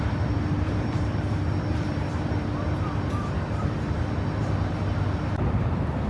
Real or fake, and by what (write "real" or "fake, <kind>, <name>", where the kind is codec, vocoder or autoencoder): fake, vocoder, BigVGAN v2